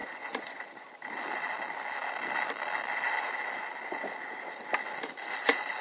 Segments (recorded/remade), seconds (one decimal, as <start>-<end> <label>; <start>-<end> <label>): 0.0-0.6 remade; 0.6-5.8 recorded